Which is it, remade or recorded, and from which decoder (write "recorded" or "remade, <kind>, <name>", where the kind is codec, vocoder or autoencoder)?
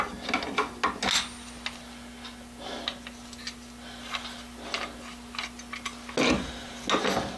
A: recorded